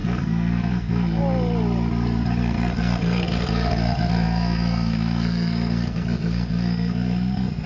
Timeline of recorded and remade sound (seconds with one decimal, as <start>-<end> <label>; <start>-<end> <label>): 0.0-1.2 remade; 1.2-2.4 recorded; 2.4-7.7 remade